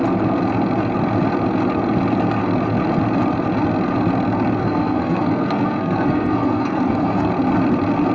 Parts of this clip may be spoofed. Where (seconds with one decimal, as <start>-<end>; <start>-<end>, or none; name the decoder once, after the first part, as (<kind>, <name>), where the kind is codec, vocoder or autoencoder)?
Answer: 4.6-7.3 (codec, SNAC)